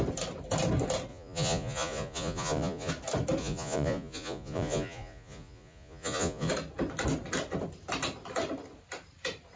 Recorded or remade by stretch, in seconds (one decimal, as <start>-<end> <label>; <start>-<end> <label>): 0.0-1.1 recorded; 1.1-2.9 remade; 2.9-3.4 recorded; 3.4-6.5 remade; 6.5-9.6 recorded